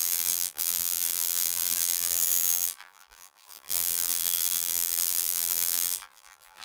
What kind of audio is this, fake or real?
fake